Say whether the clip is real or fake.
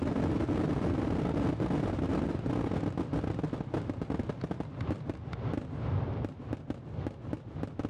real